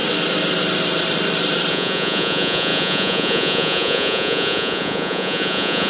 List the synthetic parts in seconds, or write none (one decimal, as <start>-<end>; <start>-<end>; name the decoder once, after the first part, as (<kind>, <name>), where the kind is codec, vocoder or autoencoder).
1.7-5.9 (vocoder, Vocos)